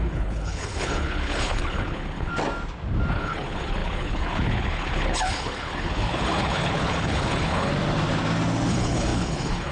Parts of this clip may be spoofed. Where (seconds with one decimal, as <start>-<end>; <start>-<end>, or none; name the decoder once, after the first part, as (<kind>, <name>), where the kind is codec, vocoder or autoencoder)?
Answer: 0.0-2.3 (codec, HILCodec); 3.1-7.7; 8.7-9.7